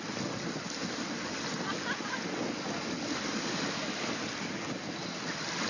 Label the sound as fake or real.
real